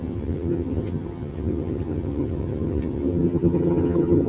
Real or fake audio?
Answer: fake